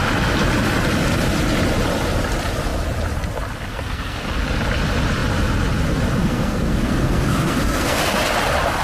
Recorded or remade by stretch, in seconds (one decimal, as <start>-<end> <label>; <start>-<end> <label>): 0.0-3.7 recorded; 3.7-4.3 remade; 4.3-6.2 recorded; 6.2-8.0 remade; 8.0-8.8 recorded